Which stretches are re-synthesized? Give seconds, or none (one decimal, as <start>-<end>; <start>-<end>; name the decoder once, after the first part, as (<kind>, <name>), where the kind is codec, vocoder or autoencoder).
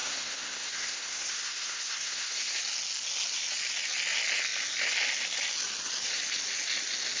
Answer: 0.0-2.6 (codec, SNAC)